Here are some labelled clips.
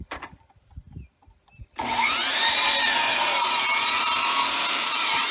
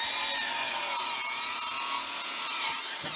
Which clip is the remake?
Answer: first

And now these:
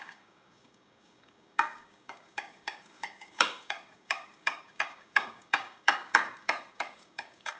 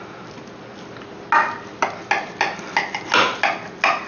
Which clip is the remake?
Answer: first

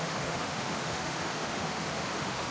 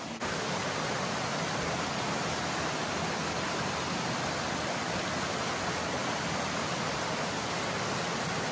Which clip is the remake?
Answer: first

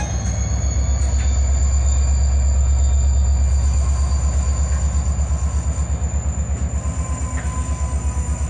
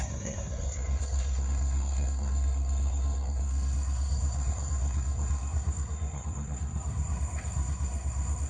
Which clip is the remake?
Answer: second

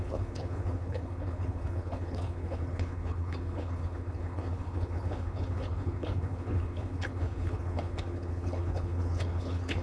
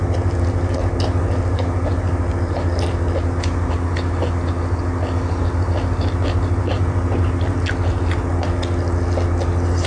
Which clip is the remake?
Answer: first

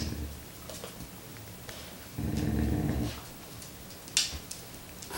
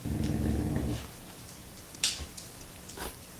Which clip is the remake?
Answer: second